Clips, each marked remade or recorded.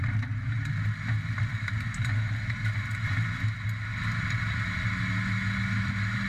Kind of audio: recorded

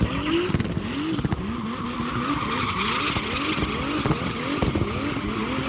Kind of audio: recorded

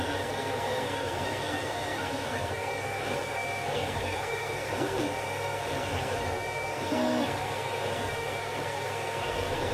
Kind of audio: remade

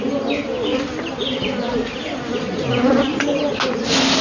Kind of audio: recorded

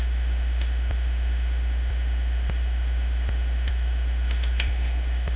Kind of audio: remade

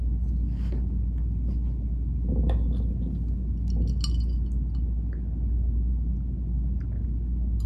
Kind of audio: recorded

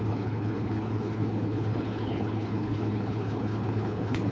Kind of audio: remade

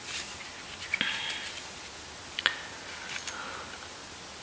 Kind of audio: recorded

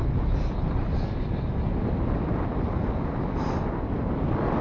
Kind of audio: recorded